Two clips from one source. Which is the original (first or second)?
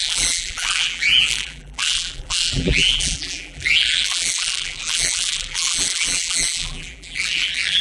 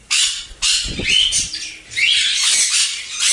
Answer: second